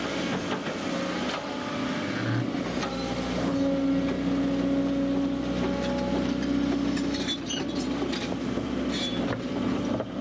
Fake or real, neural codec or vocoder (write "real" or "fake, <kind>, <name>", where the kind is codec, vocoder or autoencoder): real